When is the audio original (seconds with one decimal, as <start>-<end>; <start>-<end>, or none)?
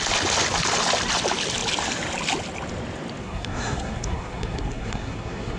0.0-3.2